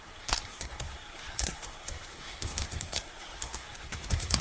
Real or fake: fake